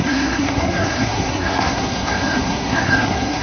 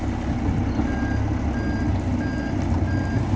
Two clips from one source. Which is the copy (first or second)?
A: first